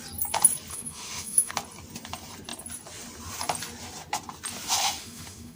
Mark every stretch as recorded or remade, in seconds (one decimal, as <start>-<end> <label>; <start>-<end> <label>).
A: 0.0-0.7 recorded; 0.7-1.5 remade; 1.5-5.0 recorded; 5.0-5.6 remade